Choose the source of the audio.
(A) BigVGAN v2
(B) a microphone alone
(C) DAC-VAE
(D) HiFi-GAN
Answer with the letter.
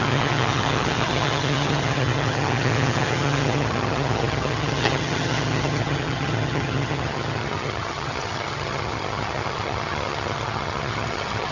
D